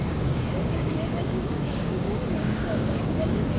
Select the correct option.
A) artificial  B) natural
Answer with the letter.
A